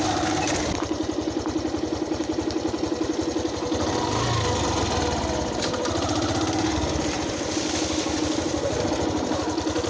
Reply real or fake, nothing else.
real